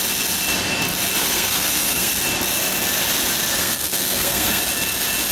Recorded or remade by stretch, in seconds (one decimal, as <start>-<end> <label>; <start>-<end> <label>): 0.0-1.2 recorded; 1.2-2.1 remade; 2.1-3.6 recorded; 3.6-4.6 remade; 4.6-5.3 recorded